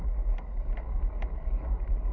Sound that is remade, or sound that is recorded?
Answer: recorded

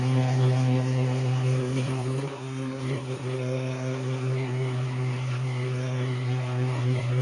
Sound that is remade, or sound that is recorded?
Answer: remade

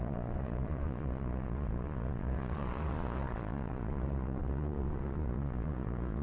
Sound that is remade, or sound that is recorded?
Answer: remade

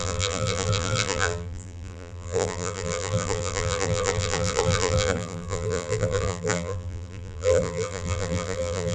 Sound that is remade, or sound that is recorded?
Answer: remade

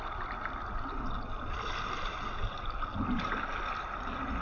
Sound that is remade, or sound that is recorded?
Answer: recorded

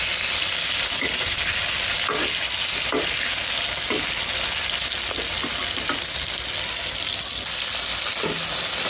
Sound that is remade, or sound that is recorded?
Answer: recorded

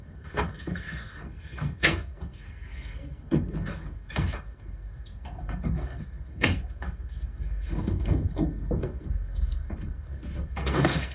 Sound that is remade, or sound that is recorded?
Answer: remade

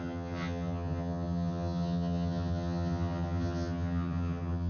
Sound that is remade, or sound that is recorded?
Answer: remade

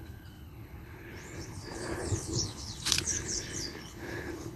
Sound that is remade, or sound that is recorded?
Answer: remade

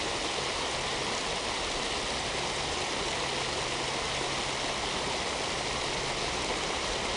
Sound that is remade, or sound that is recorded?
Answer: recorded